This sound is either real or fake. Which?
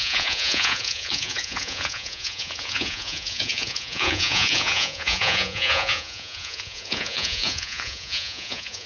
fake